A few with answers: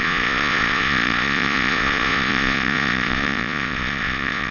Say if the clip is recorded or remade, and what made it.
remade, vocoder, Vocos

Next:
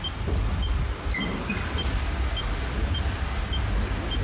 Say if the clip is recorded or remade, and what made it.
recorded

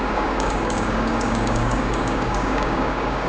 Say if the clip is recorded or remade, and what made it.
remade, codec, DAC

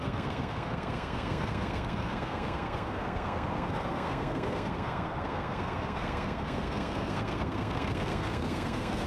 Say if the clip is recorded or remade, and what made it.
remade, codec, SNAC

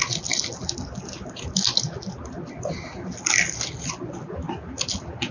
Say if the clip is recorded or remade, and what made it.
recorded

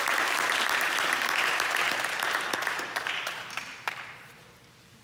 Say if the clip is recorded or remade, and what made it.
remade, vocoder, BigVGAN v2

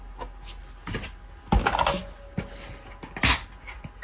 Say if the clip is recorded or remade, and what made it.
recorded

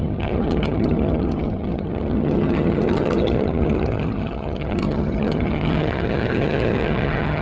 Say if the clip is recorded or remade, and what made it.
remade, vocoder, HiFi-GAN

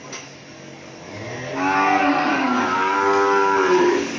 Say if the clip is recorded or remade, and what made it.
remade, codec, DAC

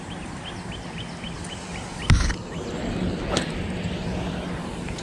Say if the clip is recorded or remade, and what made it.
recorded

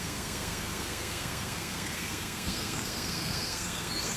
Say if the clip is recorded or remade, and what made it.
remade, codec, SNAC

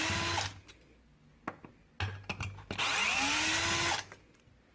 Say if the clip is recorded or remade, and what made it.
recorded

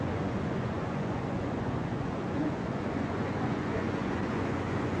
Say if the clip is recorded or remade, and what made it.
remade, vocoder, Vocos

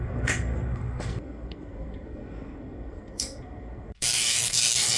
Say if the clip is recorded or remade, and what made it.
remade, codec, SNAC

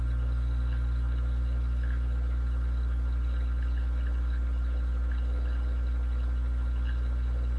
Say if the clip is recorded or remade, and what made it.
recorded